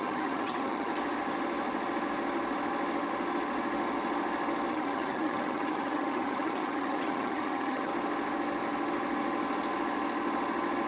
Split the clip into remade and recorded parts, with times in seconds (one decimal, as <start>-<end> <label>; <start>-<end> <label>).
0.0-0.9 remade; 0.9-4.7 recorded; 4.7-7.9 remade; 7.9-10.9 recorded

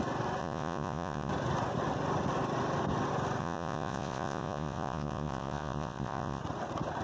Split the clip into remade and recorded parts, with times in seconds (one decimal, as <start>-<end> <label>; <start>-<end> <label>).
0.0-0.4 recorded; 0.4-1.3 remade; 1.3-3.4 recorded; 3.4-6.4 remade; 6.4-7.0 recorded

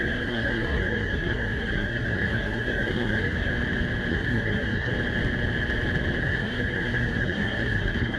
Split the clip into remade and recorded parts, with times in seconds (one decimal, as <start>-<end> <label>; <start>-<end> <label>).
0.0-3.5 remade; 3.5-4.1 recorded; 4.1-4.9 remade; 4.9-6.2 recorded; 6.2-8.2 remade

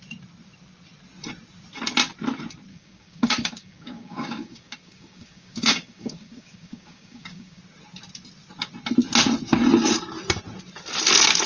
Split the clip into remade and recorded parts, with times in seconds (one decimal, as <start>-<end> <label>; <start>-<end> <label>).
0.0-2.7 recorded; 2.7-7.6 remade; 7.6-11.5 recorded

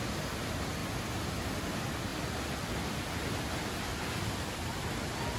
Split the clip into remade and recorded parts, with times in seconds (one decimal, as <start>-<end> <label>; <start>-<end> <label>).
0.0-5.4 recorded